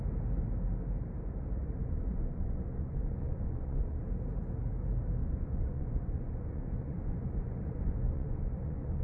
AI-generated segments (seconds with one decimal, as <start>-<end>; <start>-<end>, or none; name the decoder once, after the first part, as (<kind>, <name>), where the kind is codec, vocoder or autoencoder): 1.8-4.0 (vocoder, Vocos); 5.2-9.0